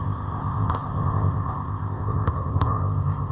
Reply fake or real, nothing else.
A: fake